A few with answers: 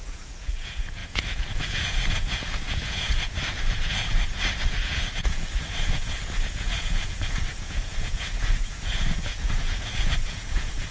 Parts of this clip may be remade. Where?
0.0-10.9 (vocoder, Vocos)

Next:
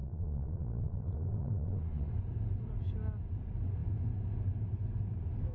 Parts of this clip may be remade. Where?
0.0-2.1 (vocoder, Vocos)